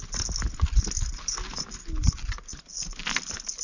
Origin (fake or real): real